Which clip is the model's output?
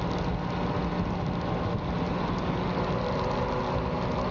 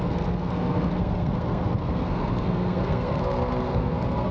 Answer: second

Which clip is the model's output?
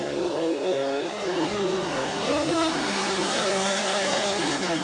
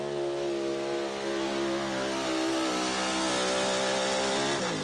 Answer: first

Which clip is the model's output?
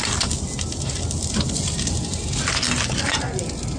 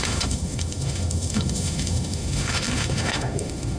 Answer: second